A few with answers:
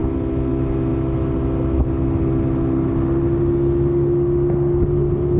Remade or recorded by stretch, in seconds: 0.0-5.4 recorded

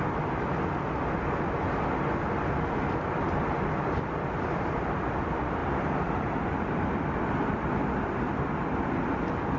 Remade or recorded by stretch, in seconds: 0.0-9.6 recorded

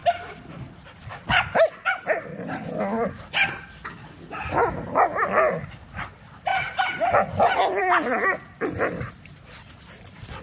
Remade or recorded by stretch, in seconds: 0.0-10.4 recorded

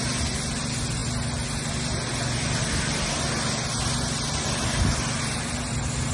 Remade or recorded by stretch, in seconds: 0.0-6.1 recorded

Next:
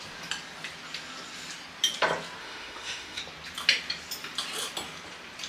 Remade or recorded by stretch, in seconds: 0.0-2.4 recorded; 2.4-3.2 remade; 3.2-5.5 recorded

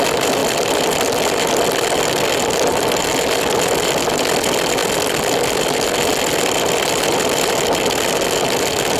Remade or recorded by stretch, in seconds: 0.0-9.0 recorded

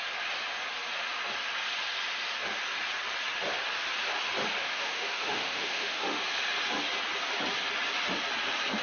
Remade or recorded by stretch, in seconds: 0.0-4.6 recorded; 4.6-6.2 remade; 6.2-8.8 recorded